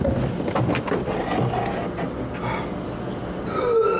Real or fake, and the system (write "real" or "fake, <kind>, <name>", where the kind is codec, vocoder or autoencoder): real